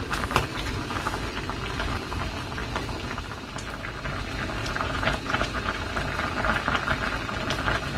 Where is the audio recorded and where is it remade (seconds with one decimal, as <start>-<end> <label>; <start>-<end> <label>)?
0.0-4.6 recorded; 4.6-5.9 remade; 5.9-8.0 recorded